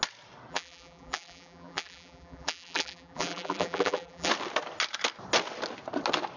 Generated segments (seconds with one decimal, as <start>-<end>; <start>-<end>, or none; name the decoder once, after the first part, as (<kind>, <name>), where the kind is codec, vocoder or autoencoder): 0.5-4.3 (vocoder, BigVGAN v2)